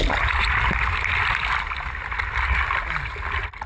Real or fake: real